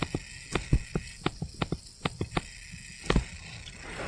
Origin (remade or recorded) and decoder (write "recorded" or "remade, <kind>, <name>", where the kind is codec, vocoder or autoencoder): recorded